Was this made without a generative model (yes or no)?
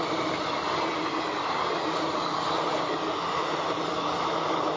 yes